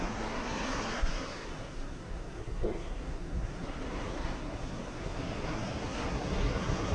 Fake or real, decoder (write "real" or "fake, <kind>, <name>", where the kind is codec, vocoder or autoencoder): fake, codec, SNAC